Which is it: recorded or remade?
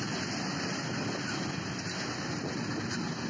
recorded